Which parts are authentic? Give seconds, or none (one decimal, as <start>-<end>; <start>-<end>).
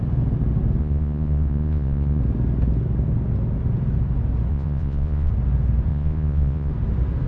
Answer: 0.0-0.8; 2.2-4.5; 5.3-5.9; 6.7-7.3